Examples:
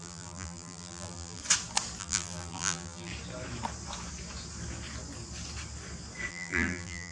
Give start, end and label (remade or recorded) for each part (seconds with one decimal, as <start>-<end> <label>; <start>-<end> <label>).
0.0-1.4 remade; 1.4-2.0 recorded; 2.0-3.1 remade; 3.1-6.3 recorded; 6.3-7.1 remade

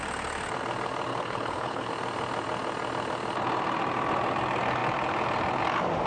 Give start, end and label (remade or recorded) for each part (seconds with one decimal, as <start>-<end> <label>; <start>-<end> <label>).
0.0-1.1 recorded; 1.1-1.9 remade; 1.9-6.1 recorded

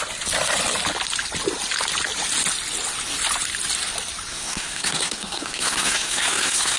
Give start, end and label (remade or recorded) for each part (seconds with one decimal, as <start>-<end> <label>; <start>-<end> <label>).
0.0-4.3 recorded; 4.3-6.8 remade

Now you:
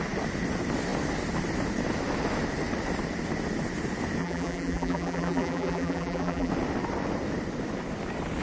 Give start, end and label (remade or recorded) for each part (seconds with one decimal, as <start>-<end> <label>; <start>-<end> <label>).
0.0-4.2 recorded; 4.2-6.5 remade; 6.5-8.4 recorded